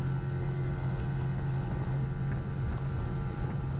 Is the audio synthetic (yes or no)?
no